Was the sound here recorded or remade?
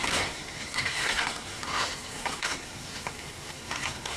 remade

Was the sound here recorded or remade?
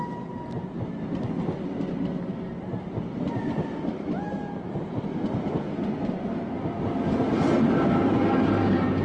recorded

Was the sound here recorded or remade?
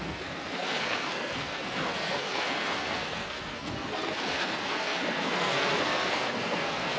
remade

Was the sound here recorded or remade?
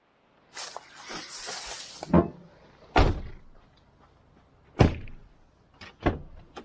recorded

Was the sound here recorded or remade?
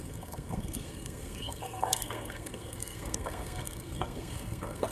remade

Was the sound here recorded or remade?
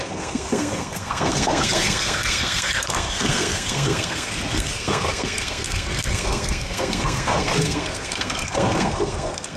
remade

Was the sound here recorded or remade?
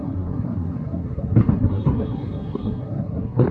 remade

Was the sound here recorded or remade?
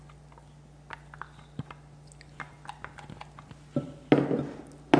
recorded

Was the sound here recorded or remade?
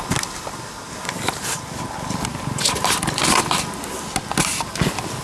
recorded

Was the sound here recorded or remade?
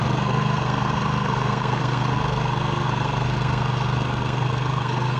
remade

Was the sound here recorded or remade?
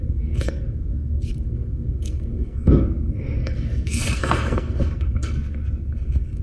remade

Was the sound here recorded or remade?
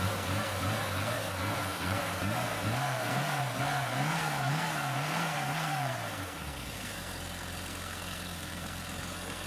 remade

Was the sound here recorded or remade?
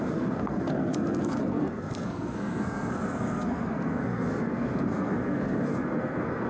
remade